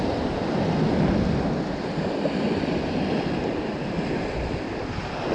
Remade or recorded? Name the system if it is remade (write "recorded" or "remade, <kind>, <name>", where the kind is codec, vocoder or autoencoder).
recorded